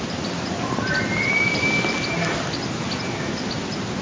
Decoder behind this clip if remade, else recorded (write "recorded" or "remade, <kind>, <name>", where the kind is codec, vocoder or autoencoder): recorded